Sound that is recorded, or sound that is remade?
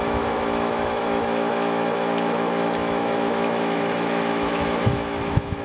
remade